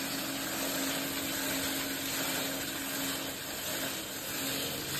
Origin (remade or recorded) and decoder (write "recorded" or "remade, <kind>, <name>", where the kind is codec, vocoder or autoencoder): recorded